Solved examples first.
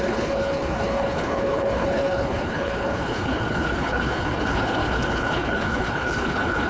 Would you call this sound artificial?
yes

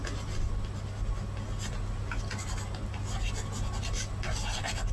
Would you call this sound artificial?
no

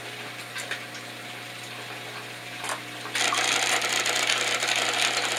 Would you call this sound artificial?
yes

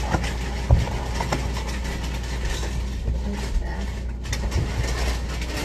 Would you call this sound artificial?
no